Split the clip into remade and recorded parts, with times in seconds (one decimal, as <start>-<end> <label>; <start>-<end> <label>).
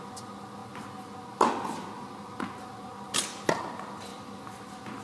0.0-5.0 recorded